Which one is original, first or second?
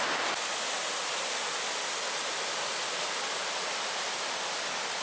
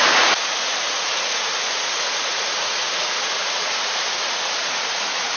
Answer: first